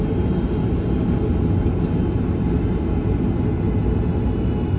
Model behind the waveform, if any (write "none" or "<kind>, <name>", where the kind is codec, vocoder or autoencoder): none